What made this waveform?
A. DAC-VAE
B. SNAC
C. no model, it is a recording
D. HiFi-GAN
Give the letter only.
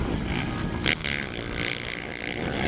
C